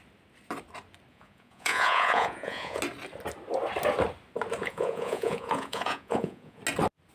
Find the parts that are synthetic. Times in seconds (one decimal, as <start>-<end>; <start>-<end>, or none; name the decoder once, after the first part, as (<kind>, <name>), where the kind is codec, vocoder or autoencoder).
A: 1.1-2.8 (vocoder, Vocos); 4.6-6.6